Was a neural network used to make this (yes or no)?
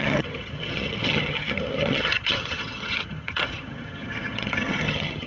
yes